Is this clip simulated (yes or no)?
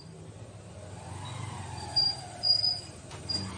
no